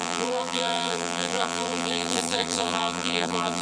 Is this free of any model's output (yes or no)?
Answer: no